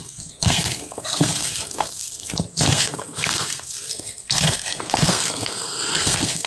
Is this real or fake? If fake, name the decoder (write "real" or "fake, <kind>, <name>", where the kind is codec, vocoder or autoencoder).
fake, codec, SNAC